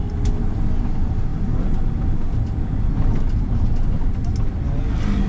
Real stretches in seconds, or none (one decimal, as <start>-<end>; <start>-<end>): 0.0-5.3